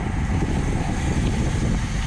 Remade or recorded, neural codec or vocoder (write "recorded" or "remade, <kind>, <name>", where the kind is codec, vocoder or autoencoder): recorded